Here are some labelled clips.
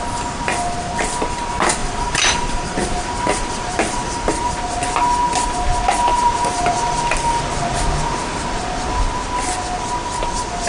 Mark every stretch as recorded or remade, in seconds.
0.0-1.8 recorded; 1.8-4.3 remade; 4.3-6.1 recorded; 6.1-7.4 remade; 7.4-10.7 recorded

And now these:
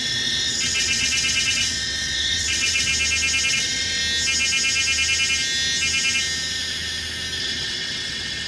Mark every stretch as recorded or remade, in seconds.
0.0-2.9 remade; 2.9-3.5 recorded; 3.5-4.0 remade; 4.0-7.4 recorded; 7.4-8.5 remade

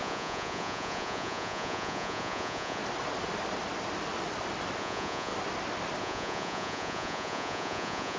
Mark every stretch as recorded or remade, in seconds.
0.0-2.8 remade; 2.8-4.8 recorded; 4.8-5.3 remade; 5.3-6.0 recorded; 6.0-8.2 remade

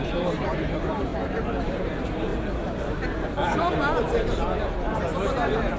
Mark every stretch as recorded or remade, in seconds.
0.0-1.1 remade; 1.1-1.6 recorded; 1.6-2.3 remade; 2.3-5.8 recorded

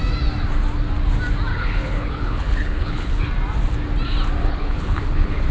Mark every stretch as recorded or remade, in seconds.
0.0-1.5 recorded; 1.5-3.3 remade; 3.3-4.4 recorded; 4.4-5.5 remade

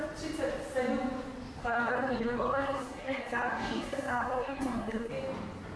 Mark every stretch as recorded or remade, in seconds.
0.0-1.6 recorded; 1.6-5.1 remade; 5.1-5.8 recorded